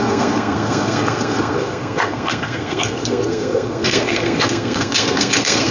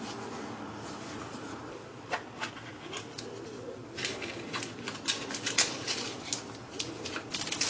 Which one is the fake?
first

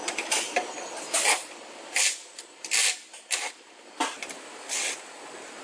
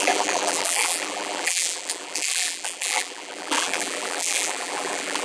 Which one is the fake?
second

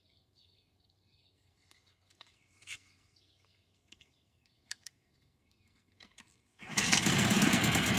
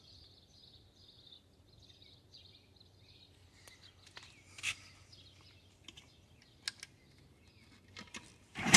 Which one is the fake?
first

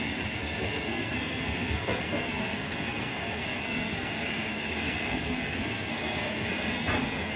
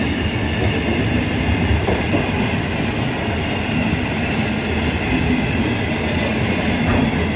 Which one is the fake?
first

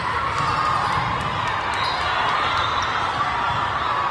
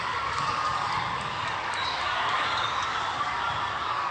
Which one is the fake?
second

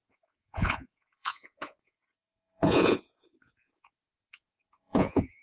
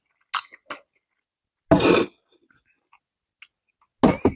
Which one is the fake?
first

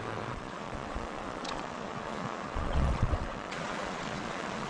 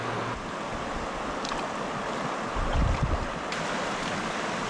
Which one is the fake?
first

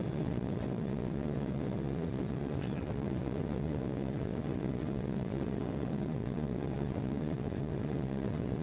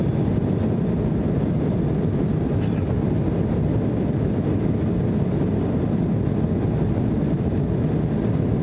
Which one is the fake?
first